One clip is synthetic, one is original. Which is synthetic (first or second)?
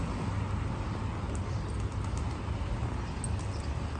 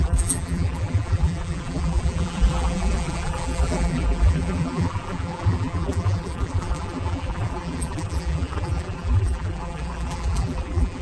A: second